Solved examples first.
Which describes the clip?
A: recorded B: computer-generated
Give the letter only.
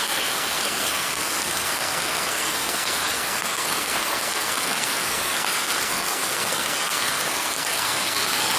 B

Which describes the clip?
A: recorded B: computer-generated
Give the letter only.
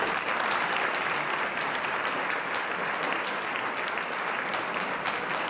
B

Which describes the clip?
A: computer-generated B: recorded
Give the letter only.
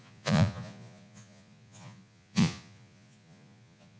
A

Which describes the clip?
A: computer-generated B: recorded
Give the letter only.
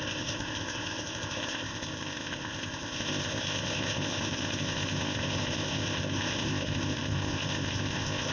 A